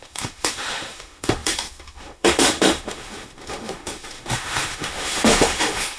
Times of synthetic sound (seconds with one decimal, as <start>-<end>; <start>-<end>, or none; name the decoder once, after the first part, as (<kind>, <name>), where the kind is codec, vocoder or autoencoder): 0.0-6.0 (autoencoder, DAC-VAE)